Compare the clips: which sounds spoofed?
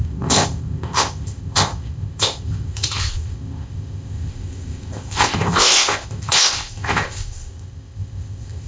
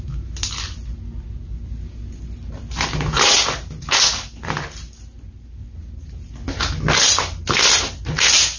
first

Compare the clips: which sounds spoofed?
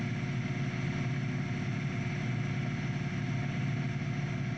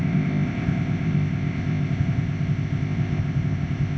second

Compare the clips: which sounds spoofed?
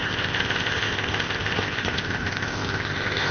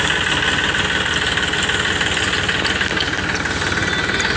first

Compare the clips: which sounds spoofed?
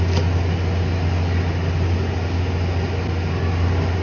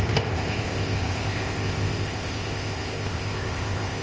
second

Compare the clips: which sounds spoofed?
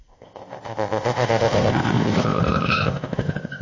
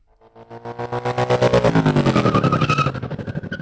first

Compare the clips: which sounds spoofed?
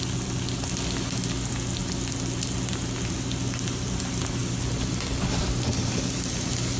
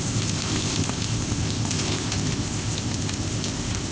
second